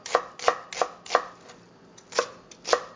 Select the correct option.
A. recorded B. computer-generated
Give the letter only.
A